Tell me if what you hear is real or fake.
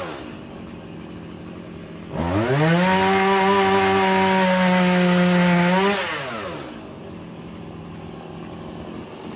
real